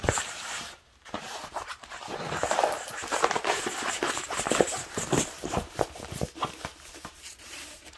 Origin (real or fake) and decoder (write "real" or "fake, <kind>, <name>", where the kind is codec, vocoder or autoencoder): fake, vocoder, BigVGAN v2